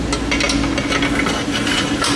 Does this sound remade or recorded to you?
recorded